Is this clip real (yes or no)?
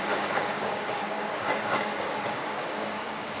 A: no